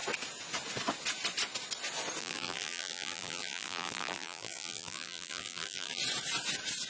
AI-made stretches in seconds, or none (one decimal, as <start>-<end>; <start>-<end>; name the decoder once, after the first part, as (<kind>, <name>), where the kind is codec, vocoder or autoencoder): 2.2-6.0 (vocoder, BigVGAN v2)